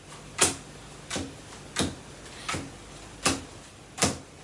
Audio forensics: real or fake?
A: real